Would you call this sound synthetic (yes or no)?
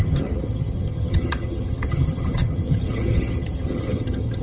yes